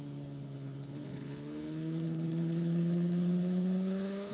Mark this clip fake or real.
fake